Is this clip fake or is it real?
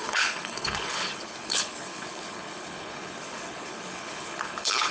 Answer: fake